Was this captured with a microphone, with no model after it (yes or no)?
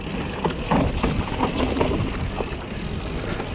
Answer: yes